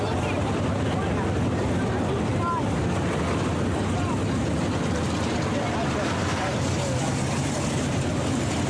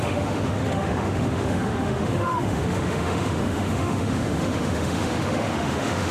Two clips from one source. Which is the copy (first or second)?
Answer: second